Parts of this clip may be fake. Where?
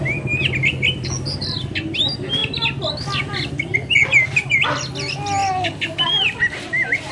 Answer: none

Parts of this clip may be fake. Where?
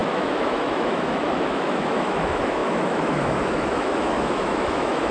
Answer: 0.0-5.1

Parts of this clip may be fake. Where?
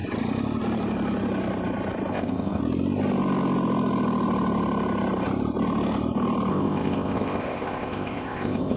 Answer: 2.1-2.6; 6.5-8.8